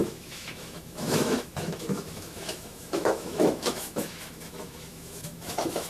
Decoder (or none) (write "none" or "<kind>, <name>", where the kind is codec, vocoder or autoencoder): autoencoder, DAC-VAE